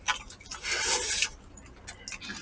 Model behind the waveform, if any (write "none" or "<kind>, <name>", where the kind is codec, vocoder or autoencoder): none